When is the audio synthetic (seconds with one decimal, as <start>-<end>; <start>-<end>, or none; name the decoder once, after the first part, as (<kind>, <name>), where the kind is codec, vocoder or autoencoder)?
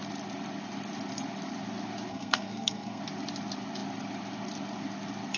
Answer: 2.1-3.0 (codec, SNAC)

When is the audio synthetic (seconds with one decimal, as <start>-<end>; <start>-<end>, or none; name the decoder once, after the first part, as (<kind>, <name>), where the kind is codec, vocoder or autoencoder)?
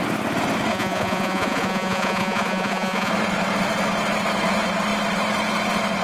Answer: 0.7-3.1 (vocoder, Vocos)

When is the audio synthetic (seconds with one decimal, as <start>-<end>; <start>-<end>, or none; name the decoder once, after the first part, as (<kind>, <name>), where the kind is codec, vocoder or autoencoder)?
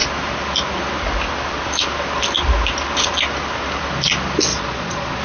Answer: 4.5-5.2 (vocoder, Vocos)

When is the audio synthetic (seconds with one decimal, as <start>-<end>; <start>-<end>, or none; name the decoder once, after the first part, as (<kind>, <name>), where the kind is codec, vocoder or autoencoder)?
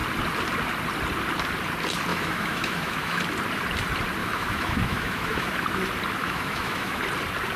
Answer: 2.1-3.2 (autoencoder, DAC-VAE); 4.2-5.5; 6.2-7.0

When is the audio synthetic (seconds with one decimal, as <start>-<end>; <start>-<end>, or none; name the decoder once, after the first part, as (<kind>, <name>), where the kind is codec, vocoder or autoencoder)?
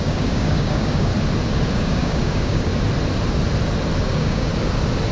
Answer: 0.0-1.1 (codec, DAC); 1.7-2.7; 4.0-4.5